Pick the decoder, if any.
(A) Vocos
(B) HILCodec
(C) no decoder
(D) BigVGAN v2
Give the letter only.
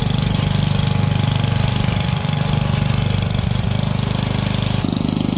C